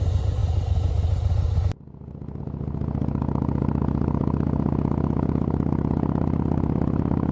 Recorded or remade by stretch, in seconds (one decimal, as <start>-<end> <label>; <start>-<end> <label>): 0.0-7.3 recorded